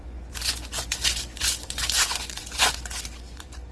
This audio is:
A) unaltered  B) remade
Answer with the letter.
B